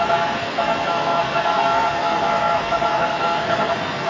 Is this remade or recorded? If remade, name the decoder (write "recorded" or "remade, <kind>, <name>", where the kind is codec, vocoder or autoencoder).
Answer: remade, codec, SNAC